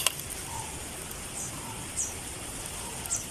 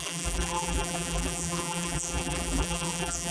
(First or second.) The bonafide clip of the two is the first